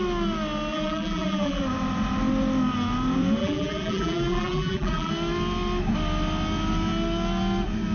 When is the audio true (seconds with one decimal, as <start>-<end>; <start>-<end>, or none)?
0.0-0.7; 1.6-3.4; 5.1-7.9